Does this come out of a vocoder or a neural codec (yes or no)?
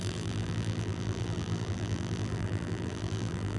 yes